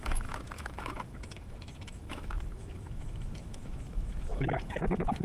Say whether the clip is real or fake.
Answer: fake